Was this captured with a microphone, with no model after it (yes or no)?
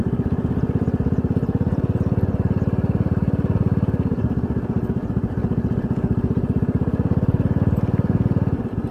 yes